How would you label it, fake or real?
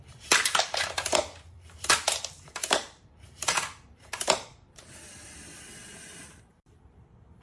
fake